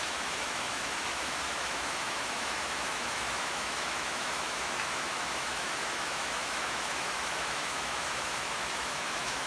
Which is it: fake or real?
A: fake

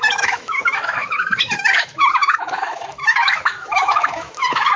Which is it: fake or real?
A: fake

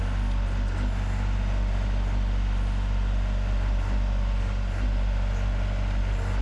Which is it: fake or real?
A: real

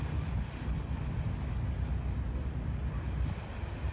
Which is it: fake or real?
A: real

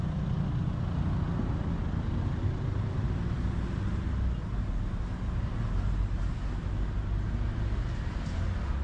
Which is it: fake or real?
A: real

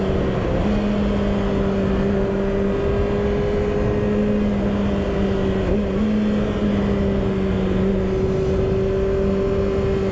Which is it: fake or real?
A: real